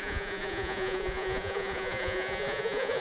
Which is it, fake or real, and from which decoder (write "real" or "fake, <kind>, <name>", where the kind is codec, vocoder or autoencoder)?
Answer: fake, vocoder, Vocos